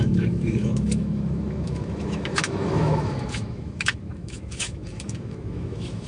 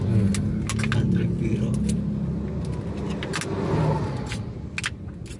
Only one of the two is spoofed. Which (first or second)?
first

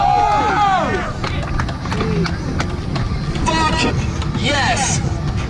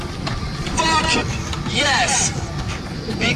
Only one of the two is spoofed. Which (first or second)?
second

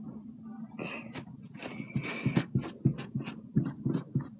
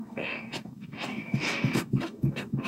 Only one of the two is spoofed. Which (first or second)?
second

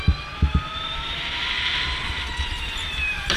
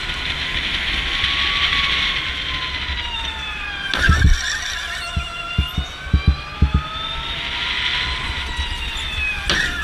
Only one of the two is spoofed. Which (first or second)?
first